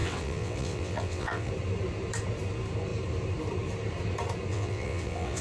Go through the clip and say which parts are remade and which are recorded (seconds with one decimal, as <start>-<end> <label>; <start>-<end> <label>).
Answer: 0.0-1.5 remade; 1.5-4.5 recorded; 4.5-5.4 remade